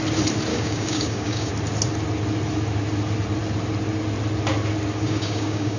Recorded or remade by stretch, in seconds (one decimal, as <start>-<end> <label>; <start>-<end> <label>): 0.0-0.5 recorded; 0.5-1.5 remade; 1.5-5.0 recorded; 5.0-5.8 remade